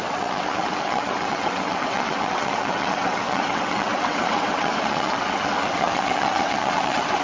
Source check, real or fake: fake